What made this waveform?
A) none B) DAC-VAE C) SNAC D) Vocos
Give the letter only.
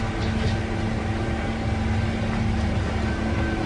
A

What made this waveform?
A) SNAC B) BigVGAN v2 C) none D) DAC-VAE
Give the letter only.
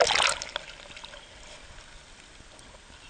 C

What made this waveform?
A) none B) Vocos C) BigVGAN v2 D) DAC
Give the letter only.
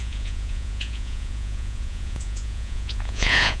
B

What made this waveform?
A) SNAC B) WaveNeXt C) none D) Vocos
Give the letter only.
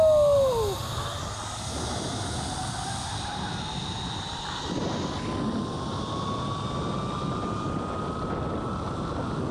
C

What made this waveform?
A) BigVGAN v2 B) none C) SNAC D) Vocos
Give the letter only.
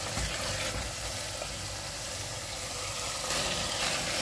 B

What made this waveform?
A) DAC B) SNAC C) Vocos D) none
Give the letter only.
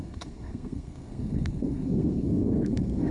B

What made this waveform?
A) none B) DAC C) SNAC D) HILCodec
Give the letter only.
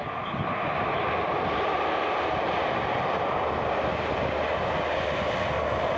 A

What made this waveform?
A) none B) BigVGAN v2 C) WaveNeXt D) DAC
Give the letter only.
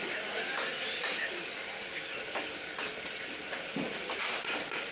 A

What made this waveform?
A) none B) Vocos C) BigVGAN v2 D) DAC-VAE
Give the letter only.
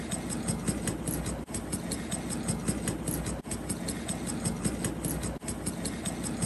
A